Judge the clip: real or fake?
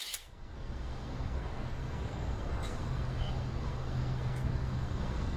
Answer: fake